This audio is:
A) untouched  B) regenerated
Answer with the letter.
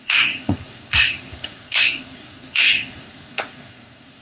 B